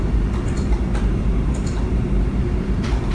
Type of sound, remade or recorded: recorded